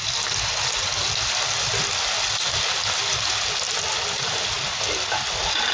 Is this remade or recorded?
recorded